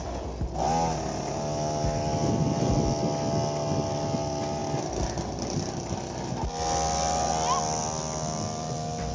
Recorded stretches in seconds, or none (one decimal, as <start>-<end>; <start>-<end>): 0.0-9.1